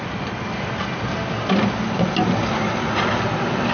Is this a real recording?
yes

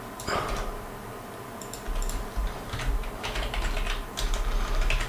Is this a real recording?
yes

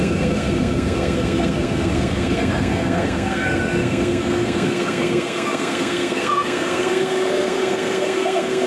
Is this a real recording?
no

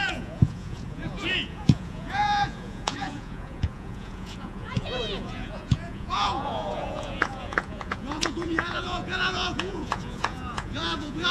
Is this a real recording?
no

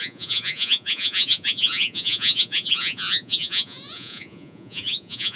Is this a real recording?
no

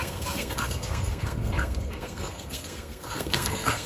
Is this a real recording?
no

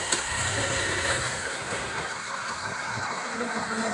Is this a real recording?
no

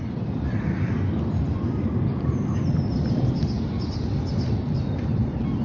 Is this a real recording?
no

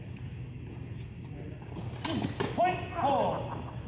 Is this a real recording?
yes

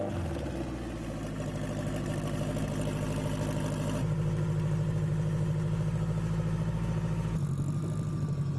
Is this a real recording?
yes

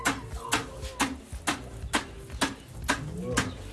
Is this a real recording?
yes